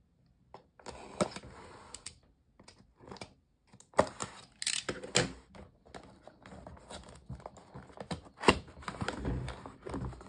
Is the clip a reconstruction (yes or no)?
no